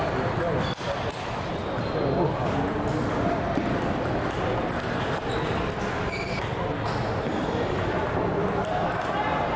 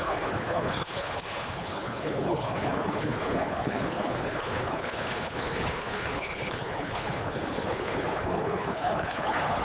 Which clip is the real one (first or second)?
first